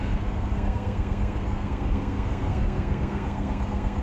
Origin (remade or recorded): remade